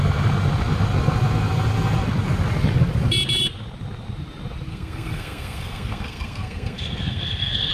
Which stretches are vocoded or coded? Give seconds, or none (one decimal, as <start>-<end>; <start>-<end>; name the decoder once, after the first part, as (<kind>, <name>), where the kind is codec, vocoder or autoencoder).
4.7-7.7 (codec, SNAC)